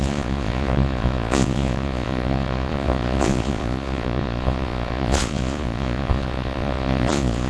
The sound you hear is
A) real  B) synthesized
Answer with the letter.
B